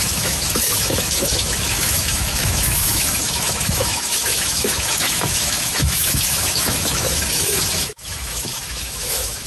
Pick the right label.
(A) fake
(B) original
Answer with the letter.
A